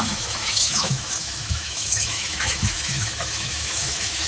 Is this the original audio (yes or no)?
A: no